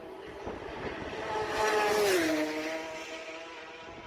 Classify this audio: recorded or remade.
recorded